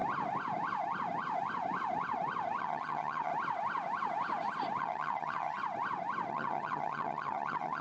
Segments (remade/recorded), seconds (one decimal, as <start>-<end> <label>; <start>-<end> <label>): 0.0-2.6 recorded; 2.6-3.3 remade; 3.3-4.8 recorded; 4.8-5.6 remade; 5.6-6.3 recorded; 6.3-7.8 remade